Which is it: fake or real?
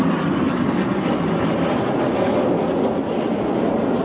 real